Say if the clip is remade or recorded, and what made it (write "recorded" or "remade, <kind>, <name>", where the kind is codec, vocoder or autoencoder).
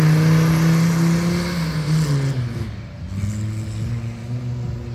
recorded